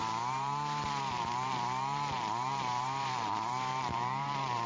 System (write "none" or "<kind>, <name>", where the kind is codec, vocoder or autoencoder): vocoder, BigVGAN v2